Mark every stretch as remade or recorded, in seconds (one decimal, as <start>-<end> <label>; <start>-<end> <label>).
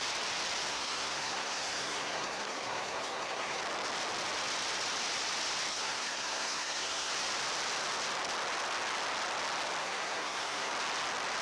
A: 0.0-0.7 recorded; 0.7-3.6 remade; 3.6-5.7 recorded; 5.7-7.1 remade; 7.1-9.8 recorded; 9.8-10.7 remade; 10.7-11.4 recorded